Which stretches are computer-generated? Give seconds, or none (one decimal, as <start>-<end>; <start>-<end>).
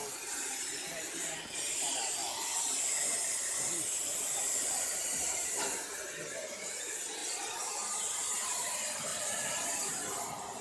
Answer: 2.2-6.2; 9.1-9.9